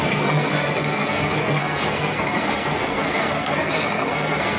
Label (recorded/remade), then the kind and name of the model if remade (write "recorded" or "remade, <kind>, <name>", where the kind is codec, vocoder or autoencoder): remade, codec, SNAC